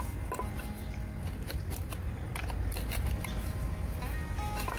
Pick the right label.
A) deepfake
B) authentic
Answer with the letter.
B